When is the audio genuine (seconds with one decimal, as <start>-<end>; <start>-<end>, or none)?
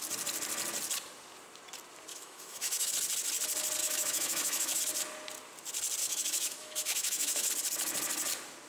0.0-2.1; 2.9-3.8; 4.8-6.0; 7.5-8.7